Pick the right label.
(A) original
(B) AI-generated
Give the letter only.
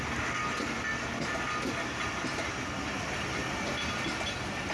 A